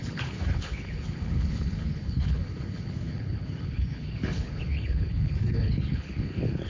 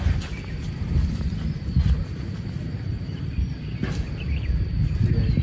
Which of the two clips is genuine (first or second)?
second